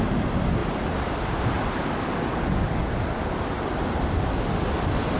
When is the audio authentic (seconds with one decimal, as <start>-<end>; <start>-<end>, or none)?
0.0-5.2